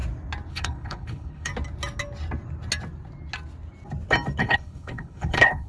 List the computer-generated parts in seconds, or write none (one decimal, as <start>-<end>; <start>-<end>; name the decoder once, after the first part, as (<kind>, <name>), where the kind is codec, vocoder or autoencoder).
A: 0.5-1.5 (codec, HILCodec); 4.4-5.7